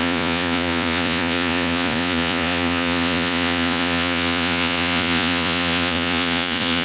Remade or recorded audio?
remade